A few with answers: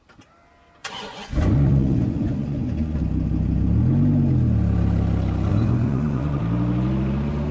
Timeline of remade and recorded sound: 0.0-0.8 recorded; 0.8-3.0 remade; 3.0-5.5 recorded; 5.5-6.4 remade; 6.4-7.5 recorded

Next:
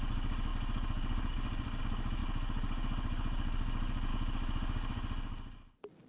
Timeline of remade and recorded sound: 0.0-6.1 recorded

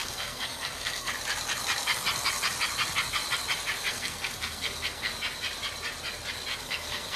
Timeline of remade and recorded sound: 0.0-1.1 remade; 1.1-3.9 recorded; 3.9-5.1 remade; 5.1-6.5 recorded; 6.5-7.2 remade

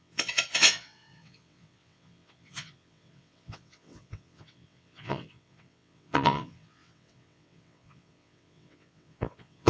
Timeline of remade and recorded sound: 0.0-9.7 remade

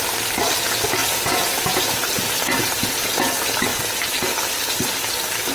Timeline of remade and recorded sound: 0.0-1.0 recorded; 1.0-2.1 remade; 2.1-2.6 recorded; 2.6-3.3 remade; 3.3-5.5 recorded

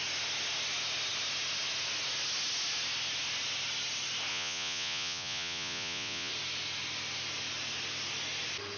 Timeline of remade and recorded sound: 0.0-4.3 recorded; 4.3-6.3 remade; 6.3-8.8 recorded

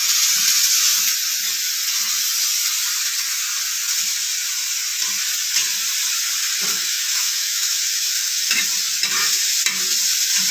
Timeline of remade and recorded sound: 0.0-6.7 recorded; 6.7-8.6 remade; 8.6-10.5 recorded